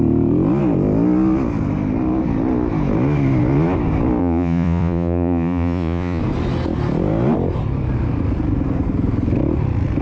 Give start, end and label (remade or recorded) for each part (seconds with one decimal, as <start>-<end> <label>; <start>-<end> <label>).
0.0-4.2 recorded; 4.2-6.2 remade; 6.2-10.0 recorded